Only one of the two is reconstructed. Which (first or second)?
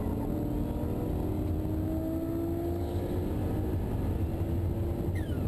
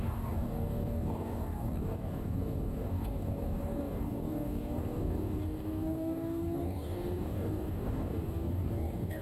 second